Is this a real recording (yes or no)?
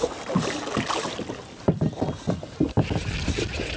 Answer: yes